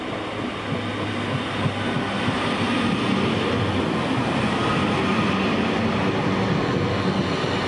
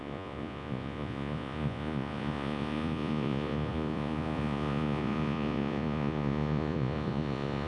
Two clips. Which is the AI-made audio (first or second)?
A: second